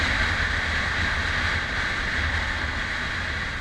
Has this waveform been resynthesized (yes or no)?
no